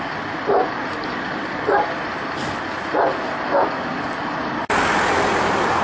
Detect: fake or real real